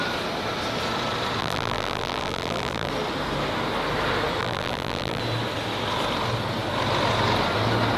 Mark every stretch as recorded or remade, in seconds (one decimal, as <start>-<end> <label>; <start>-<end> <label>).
0.0-1.4 recorded; 1.4-2.9 remade; 2.9-4.4 recorded; 4.4-5.2 remade; 5.2-8.0 recorded